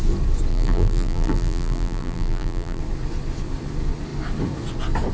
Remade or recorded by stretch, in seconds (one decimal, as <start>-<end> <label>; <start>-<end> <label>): 0.0-0.5 recorded; 0.5-2.8 remade; 2.8-5.1 recorded